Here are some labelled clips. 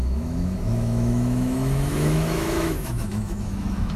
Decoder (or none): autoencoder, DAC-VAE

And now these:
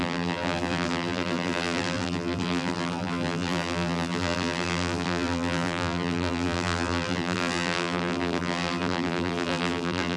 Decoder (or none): vocoder, BigVGAN v2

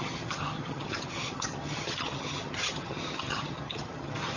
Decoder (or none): vocoder, HiFi-GAN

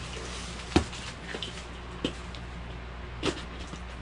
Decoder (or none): none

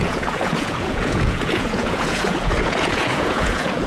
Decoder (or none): vocoder, Vocos